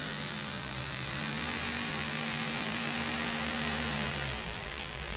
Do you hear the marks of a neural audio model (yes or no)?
yes